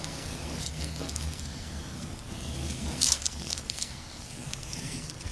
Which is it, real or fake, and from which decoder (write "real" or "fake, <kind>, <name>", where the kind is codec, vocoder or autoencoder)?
fake, codec, SNAC